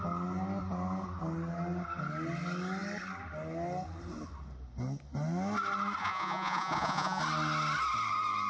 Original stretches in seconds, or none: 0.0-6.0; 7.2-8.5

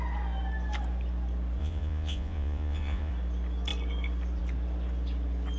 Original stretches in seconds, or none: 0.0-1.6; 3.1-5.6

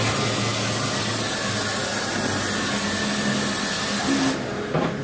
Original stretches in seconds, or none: 0.0-5.0

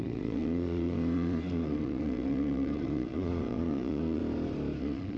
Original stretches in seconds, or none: 4.2-4.8

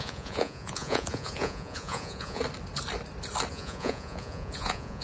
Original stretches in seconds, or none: 2.4-3.5